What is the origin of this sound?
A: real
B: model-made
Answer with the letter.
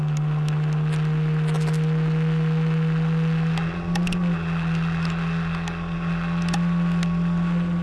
A